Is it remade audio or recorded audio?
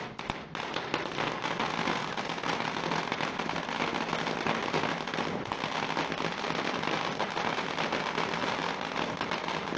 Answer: recorded